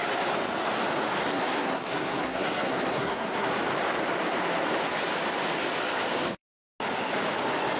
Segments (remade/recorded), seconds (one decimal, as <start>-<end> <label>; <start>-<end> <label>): 0.0-1.2 recorded; 1.2-3.5 remade; 3.5-7.8 recorded